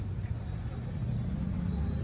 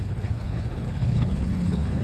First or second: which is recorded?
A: first